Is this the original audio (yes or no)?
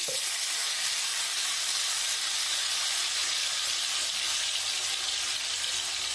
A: yes